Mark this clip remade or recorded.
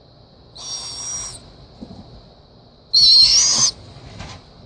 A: recorded